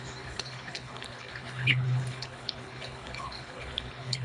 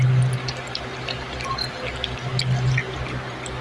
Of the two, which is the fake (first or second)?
first